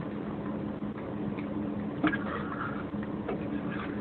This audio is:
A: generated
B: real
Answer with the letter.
B